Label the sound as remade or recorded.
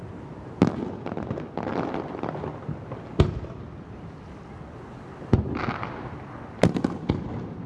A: recorded